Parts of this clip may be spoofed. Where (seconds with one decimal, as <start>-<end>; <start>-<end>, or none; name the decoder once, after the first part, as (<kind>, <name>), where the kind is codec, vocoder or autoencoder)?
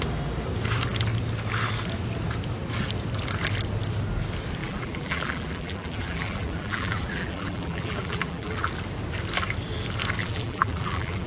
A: 4.6-8.7 (vocoder, BigVGAN v2); 10.2-11.3